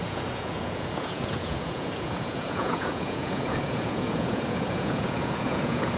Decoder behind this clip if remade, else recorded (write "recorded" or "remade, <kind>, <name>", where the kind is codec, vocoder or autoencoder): remade, vocoder, Vocos